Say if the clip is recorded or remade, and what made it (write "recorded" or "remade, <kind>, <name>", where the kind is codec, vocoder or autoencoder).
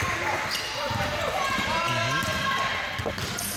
recorded